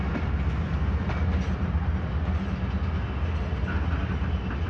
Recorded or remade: recorded